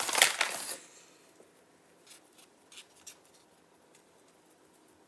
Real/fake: real